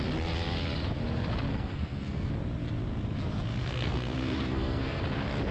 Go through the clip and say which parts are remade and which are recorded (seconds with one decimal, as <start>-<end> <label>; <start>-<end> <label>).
0.0-1.5 recorded; 1.5-2.3 remade; 2.3-3.6 recorded; 3.6-5.0 remade; 5.0-5.5 recorded